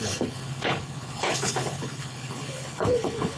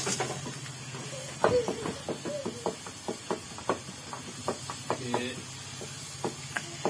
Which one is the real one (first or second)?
second